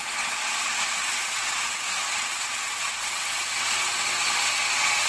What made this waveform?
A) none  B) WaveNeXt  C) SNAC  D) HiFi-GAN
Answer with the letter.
B